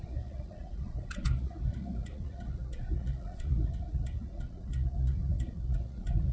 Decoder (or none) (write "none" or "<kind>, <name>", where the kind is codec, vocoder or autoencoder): vocoder, Vocos